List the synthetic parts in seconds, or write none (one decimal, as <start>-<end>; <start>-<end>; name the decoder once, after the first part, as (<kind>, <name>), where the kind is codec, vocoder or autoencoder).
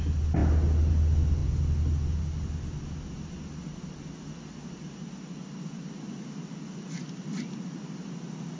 none